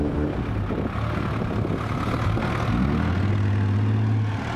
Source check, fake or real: real